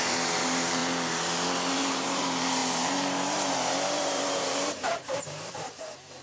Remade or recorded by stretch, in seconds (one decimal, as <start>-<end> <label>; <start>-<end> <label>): 0.0-0.8 remade; 0.8-1.7 recorded; 1.7-6.2 remade